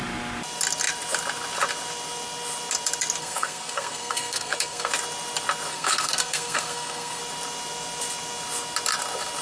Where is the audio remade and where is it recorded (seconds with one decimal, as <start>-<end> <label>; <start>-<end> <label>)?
0.0-3.2 recorded; 3.2-4.9 remade; 4.9-5.7 recorded; 5.7-7.2 remade; 7.2-9.4 recorded